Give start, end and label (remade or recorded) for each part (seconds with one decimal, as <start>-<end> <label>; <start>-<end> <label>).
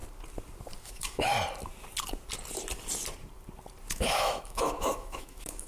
0.0-0.8 recorded; 0.8-1.3 remade; 1.3-3.9 recorded; 3.9-5.7 remade